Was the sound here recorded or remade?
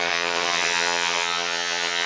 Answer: remade